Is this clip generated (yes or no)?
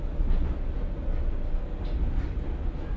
no